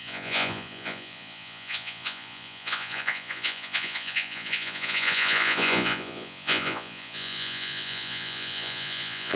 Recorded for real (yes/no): no